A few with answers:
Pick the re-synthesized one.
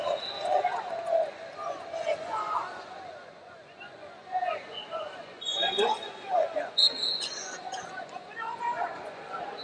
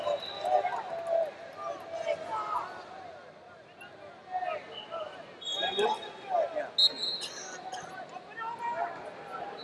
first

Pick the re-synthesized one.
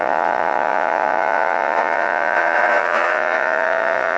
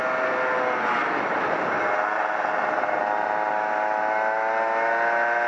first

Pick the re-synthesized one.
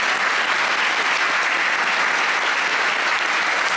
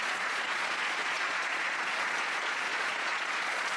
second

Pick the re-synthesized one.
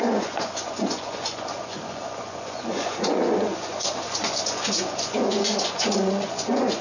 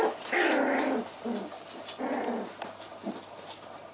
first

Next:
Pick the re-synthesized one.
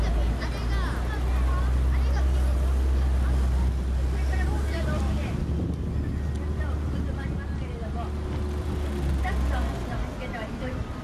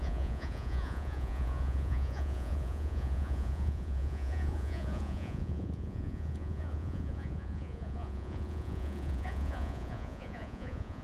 second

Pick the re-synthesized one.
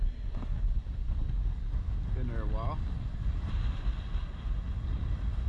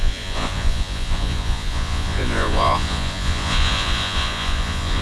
second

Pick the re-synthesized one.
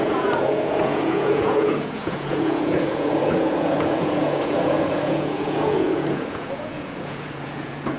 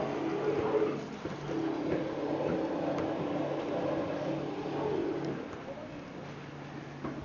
first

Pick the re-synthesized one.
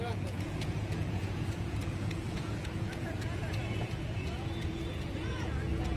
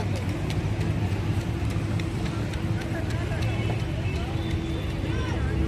first